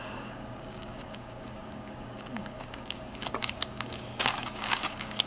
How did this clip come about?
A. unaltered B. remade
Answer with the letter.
B